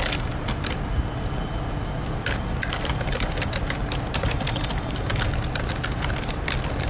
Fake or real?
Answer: real